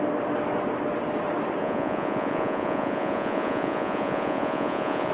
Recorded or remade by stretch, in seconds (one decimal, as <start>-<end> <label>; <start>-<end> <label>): 0.0-1.6 recorded; 1.6-5.1 remade